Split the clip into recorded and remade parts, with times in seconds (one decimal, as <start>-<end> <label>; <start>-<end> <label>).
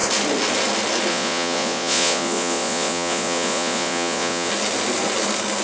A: 0.0-1.1 recorded; 1.1-4.5 remade; 4.5-5.6 recorded